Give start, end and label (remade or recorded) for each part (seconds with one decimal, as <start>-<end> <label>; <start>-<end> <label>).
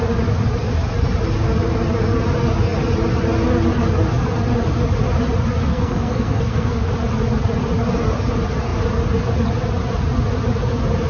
0.0-5.7 recorded; 5.7-6.9 remade; 6.9-11.1 recorded